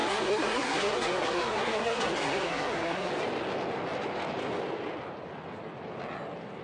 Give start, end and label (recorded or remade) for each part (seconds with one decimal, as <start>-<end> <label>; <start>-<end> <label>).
0.0-3.1 remade; 3.1-6.6 recorded